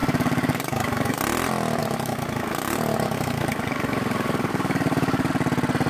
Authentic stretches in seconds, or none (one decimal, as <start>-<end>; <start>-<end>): 1.2-1.8; 5.3-5.9